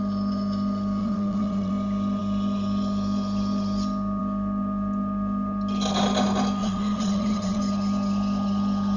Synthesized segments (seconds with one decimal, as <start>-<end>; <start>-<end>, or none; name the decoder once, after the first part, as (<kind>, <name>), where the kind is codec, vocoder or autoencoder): 1.0-1.7 (vocoder, WaveNeXt); 6.6-7.6